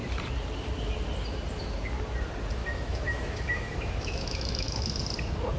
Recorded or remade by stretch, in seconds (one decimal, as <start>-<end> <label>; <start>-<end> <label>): 0.0-2.6 recorded; 2.6-5.0 remade; 5.0-5.6 recorded

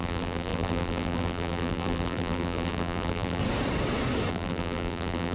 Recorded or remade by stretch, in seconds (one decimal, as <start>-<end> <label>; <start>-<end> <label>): 0.0-3.4 remade; 3.4-4.3 recorded; 4.3-5.3 remade

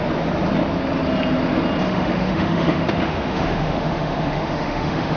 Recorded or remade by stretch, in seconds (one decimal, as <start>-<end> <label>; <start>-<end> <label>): 0.0-1.9 recorded; 1.9-5.2 remade

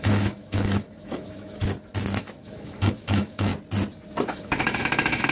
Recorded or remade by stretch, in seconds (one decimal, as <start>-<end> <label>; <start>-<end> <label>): 0.0-1.6 remade; 1.6-2.2 recorded; 2.2-3.5 remade; 3.5-4.3 recorded; 4.3-5.3 remade

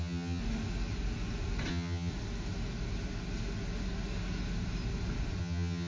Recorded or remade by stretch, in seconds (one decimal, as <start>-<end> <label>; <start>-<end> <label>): 0.0-0.4 remade; 0.4-1.7 recorded; 1.7-2.1 remade; 2.1-5.4 recorded; 5.4-5.9 remade

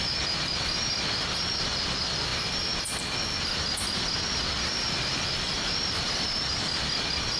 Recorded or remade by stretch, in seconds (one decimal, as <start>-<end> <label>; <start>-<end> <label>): 0.0-7.4 recorded

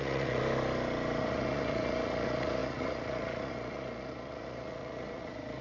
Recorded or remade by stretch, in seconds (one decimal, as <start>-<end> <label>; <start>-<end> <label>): 0.0-0.4 remade; 0.4-1.2 recorded; 1.2-5.6 remade